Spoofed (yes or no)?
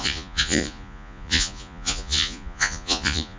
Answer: yes